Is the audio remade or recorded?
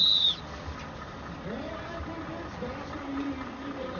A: recorded